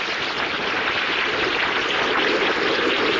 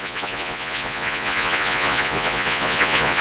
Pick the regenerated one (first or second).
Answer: second